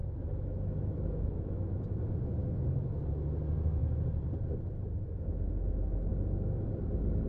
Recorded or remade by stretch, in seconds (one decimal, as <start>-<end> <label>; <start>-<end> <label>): 0.0-1.8 remade; 1.8-6.1 recorded; 6.1-6.7 remade; 6.7-7.3 recorded